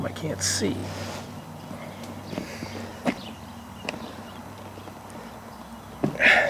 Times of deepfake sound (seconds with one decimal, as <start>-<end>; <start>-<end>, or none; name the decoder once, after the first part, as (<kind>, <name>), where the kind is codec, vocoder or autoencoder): 2.9-4.4 (vocoder, BigVGAN v2)